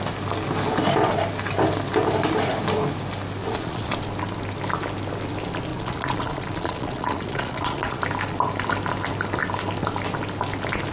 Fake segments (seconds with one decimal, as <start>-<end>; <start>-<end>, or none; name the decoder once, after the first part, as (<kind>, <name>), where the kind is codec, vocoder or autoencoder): 3.4-3.9 (vocoder, Vocos); 5.7-8.0